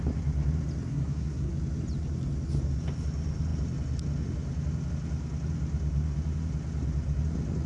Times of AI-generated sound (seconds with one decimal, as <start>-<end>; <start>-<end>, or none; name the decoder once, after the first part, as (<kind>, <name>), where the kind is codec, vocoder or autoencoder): 0.9-1.5 (codec, SNAC)